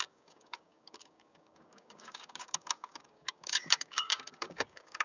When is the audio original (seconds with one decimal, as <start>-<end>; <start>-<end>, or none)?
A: none